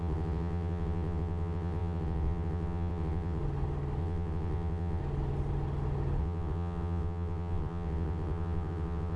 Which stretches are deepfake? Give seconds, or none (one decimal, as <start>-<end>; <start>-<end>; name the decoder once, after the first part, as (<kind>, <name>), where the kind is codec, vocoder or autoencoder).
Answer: 0.0-3.4 (vocoder, WaveNeXt); 4.0-5.0; 6.2-9.2